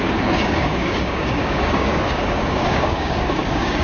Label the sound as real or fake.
fake